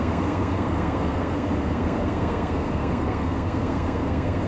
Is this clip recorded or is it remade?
remade